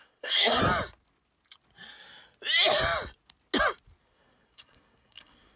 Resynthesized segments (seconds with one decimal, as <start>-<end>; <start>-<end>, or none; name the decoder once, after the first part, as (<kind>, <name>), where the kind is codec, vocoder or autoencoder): 0.0-0.6 (codec, SNAC); 4.0-5.6